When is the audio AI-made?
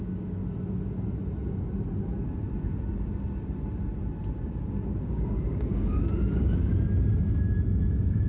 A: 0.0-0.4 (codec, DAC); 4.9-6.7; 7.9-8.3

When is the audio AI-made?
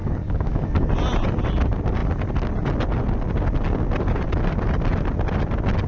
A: 0.0-0.9 (codec, DAC)